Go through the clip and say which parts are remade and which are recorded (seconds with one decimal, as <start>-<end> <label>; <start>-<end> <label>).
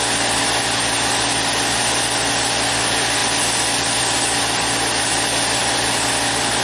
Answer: 0.0-6.6 recorded